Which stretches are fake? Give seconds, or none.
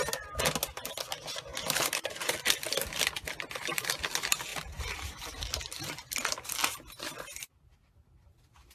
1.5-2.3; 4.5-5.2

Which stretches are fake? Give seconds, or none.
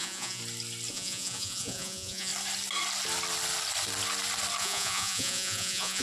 0.0-0.4; 0.9-2.3; 4.6-6.0